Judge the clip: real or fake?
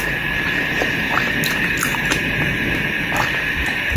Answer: real